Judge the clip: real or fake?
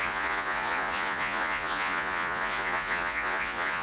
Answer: fake